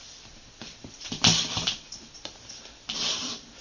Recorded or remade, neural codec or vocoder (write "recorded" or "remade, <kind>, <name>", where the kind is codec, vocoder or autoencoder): remade, vocoder, BigVGAN v2